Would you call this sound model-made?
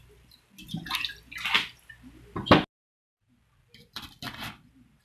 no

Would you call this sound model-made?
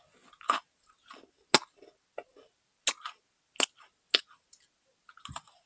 no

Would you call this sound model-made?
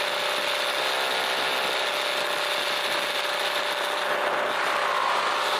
no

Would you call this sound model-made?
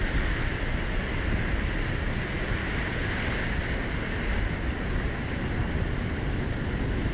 no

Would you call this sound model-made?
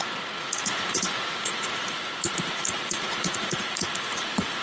yes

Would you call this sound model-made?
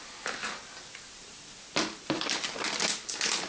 no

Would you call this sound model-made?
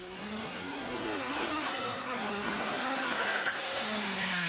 yes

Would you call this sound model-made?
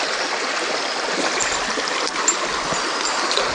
no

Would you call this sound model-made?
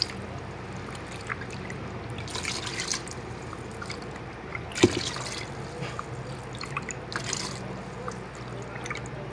no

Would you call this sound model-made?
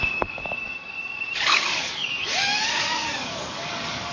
yes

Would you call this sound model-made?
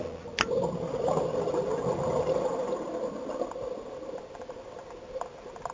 no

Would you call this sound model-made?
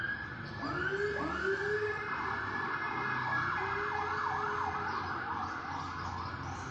no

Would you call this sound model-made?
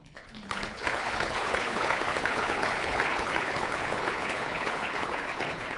yes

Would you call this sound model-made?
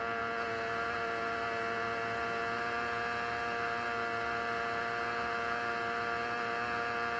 no